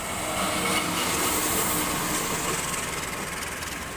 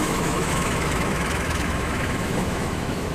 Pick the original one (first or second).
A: first